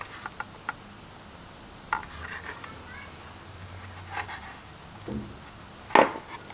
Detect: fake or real real